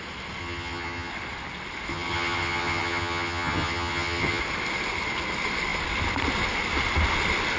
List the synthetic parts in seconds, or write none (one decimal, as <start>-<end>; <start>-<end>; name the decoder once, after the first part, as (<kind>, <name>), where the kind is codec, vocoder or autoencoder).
0.4-1.1 (vocoder, HiFi-GAN); 1.9-4.4